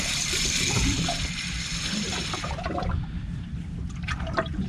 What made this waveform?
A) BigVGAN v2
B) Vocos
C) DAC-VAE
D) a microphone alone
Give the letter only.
A